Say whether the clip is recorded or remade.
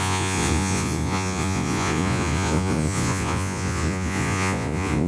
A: remade